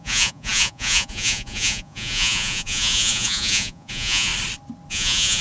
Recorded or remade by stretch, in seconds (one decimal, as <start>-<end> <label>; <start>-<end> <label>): 0.0-4.3 remade; 4.3-4.9 recorded; 4.9-5.4 remade